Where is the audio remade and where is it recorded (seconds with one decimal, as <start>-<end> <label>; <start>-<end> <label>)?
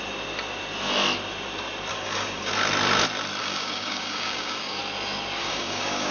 0.0-1.9 recorded; 1.9-2.5 remade; 2.5-3.4 recorded; 3.4-4.8 remade; 4.8-5.4 recorded; 5.4-6.1 remade